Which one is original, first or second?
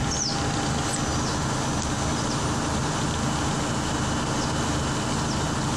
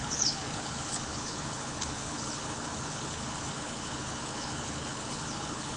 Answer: first